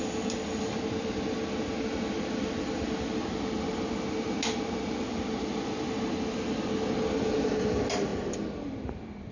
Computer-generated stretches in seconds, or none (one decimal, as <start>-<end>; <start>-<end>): none